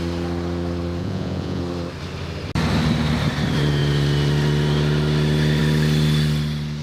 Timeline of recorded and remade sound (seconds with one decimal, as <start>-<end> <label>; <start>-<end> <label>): 0.0-1.0 recorded; 1.0-1.6 remade; 1.6-6.8 recorded